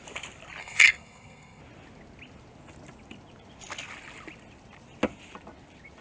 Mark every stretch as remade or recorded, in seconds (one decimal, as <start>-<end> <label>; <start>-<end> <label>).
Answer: 0.0-0.6 recorded; 0.6-1.6 remade; 1.6-6.0 recorded